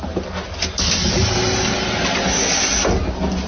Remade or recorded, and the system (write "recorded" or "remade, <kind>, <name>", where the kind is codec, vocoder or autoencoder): recorded